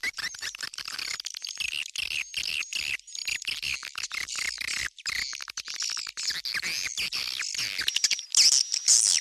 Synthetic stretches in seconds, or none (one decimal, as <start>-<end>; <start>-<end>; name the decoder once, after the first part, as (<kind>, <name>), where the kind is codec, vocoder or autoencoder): none